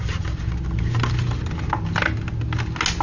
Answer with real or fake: real